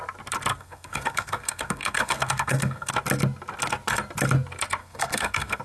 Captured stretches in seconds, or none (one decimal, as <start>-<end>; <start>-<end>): 0.0-0.5; 2.9-4.8